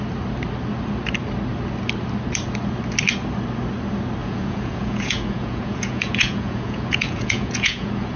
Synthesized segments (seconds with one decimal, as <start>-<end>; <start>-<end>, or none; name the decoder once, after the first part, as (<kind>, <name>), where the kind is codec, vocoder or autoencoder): 4.2-8.2 (vocoder, Vocos)